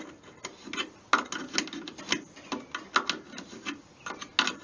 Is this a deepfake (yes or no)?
no